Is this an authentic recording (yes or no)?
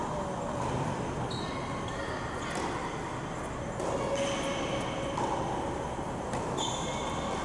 yes